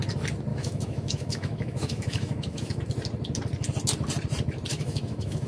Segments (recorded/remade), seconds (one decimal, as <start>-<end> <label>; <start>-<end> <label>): 0.0-0.5 recorded; 0.5-2.8 remade; 2.8-4.7 recorded; 4.7-5.5 remade